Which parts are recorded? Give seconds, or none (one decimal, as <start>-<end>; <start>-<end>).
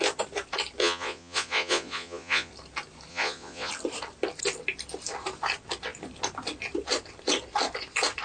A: 0.0-0.8; 2.5-3.1; 3.7-8.2